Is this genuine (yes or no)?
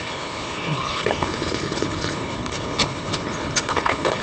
no